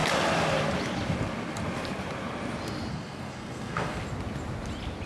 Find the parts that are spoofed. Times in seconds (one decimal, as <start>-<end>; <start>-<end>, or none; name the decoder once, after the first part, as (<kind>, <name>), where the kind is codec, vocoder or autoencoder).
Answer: 2.9-4.0 (codec, SNAC)